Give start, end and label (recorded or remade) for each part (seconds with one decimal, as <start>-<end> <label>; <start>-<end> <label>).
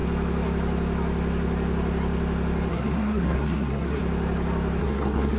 0.0-2.7 recorded; 2.7-4.0 remade; 4.0-4.8 recorded; 4.8-5.4 remade